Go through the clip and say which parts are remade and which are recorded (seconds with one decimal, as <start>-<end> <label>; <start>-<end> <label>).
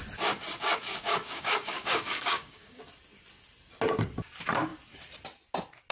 0.0-0.9 recorded; 0.9-2.8 remade; 2.8-5.9 recorded